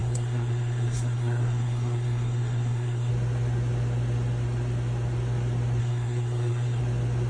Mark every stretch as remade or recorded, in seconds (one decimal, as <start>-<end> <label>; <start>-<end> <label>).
0.0-3.1 remade; 3.1-5.8 recorded; 5.8-6.8 remade; 6.8-7.3 recorded